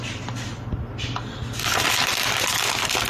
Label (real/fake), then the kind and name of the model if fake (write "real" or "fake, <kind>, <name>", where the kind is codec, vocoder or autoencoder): real